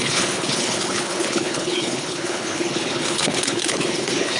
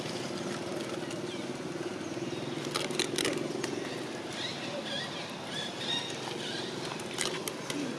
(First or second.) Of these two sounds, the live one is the second